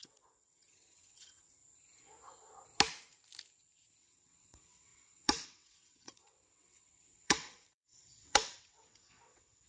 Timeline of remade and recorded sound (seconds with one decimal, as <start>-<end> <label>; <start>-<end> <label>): 0.0-1.6 remade; 1.6-4.0 recorded; 4.0-9.7 remade

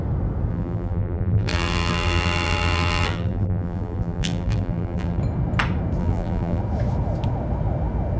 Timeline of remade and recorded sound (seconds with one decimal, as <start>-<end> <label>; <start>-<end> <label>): 0.0-0.5 recorded; 0.5-5.2 remade; 5.2-6.0 recorded; 6.0-6.6 remade; 6.6-8.2 recorded

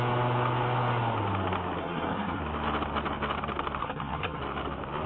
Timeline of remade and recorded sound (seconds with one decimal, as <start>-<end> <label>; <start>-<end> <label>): 0.0-1.8 recorded; 1.8-2.4 remade; 2.4-3.8 recorded; 3.8-4.4 remade; 4.4-5.1 recorded

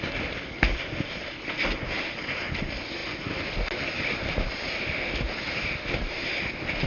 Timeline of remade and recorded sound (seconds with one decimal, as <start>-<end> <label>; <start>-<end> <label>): 0.0-6.9 recorded

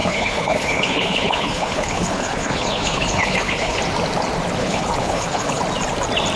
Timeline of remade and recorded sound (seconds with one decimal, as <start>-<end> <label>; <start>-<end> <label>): 0.0-3.8 remade; 3.8-4.6 recorded; 4.6-5.6 remade; 5.6-6.4 recorded

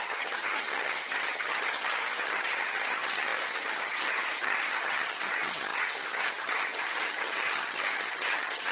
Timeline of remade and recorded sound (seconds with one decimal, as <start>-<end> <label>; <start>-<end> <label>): 0.0-8.7 remade

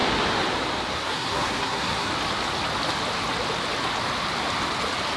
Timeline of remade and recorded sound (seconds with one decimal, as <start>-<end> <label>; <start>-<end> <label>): 0.0-0.9 recorded; 0.9-2.1 remade; 2.1-5.2 recorded